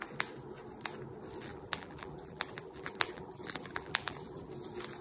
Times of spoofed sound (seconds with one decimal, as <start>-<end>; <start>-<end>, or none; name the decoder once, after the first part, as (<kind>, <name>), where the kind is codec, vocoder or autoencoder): 1.5-4.5 (vocoder, BigVGAN v2)